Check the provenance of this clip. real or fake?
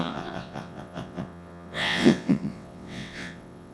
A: fake